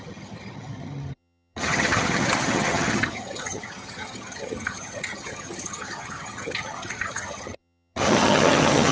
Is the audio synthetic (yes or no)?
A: yes